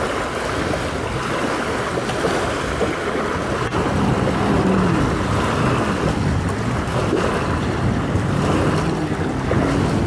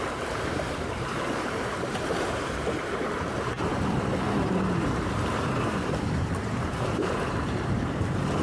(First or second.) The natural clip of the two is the first